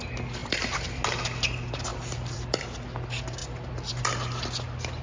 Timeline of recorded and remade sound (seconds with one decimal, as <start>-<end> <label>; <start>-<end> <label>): 0.0-0.4 recorded; 0.4-1.0 remade; 1.0-1.9 recorded; 1.9-2.6 remade; 2.6-3.4 recorded; 3.4-4.0 remade; 4.0-5.0 recorded